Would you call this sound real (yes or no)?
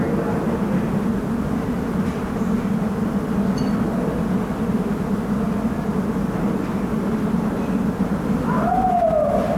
yes